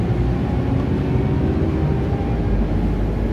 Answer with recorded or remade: recorded